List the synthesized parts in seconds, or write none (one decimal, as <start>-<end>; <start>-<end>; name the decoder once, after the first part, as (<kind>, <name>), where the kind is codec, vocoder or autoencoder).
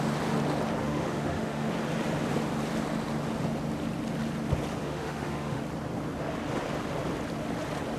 0.8-1.7 (autoencoder, DAC-VAE); 4.8-5.6